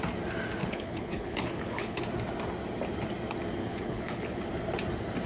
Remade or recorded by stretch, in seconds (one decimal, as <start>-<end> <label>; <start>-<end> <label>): 0.0-0.6 recorded; 0.6-2.0 remade; 2.0-3.6 recorded; 3.6-4.4 remade; 4.4-5.3 recorded